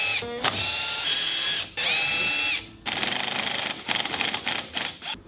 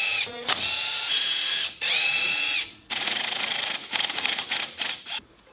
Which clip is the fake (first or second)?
second